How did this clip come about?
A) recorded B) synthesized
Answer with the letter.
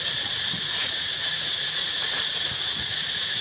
B